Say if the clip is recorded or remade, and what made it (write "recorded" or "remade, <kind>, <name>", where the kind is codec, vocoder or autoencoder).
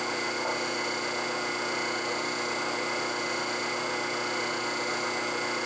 recorded